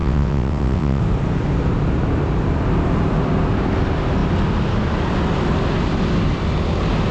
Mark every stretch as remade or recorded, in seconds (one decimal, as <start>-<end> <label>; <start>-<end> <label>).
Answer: 0.0-1.0 remade; 1.0-7.1 recorded